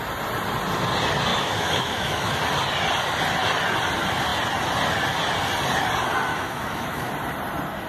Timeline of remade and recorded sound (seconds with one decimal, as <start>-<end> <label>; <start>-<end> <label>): 0.0-1.3 recorded; 1.3-2.3 remade; 2.3-6.3 recorded; 6.3-7.1 remade; 7.1-7.9 recorded